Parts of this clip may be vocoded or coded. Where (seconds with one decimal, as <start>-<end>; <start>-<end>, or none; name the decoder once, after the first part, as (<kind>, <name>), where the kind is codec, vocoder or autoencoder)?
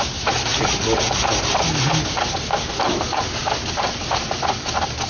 none